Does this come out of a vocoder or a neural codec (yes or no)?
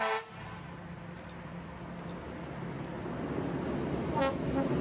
no